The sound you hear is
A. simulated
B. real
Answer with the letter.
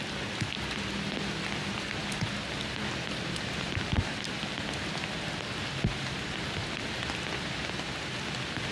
B